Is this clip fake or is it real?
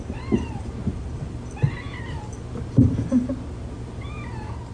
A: real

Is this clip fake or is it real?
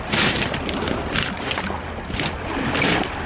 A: real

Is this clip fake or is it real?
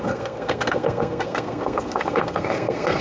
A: fake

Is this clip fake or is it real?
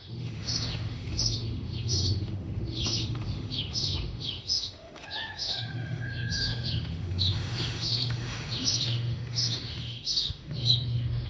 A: fake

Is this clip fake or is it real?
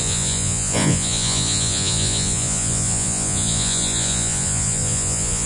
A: fake